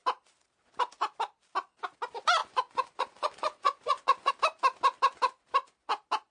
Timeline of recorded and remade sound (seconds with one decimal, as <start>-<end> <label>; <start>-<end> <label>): 0.0-2.4 recorded; 2.4-4.3 remade; 4.3-6.3 recorded